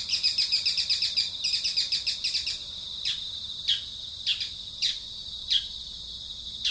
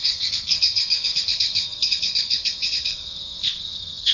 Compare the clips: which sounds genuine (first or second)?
first